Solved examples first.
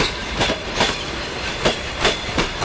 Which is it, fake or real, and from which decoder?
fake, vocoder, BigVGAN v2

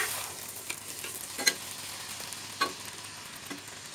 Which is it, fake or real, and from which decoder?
real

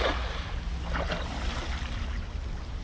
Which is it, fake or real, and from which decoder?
real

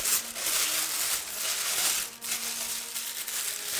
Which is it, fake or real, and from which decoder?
real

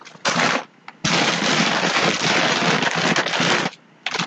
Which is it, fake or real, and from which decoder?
real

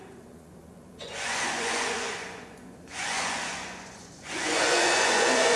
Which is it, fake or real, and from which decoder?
fake, vocoder, Vocos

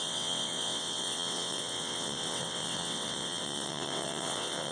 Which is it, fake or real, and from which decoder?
fake, vocoder, WaveNeXt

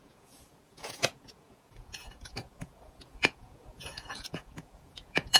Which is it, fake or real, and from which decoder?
fake, vocoder, Vocos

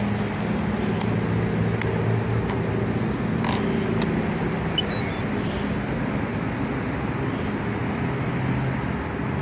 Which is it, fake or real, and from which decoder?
real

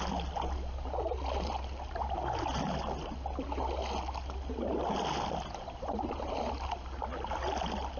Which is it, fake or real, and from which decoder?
real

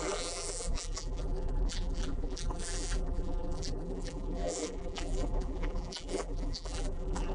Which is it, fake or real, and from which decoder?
fake, vocoder, BigVGAN v2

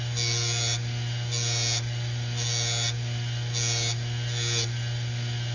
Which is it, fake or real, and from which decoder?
real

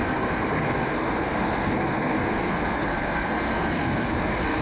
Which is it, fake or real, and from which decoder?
fake, codec, SNAC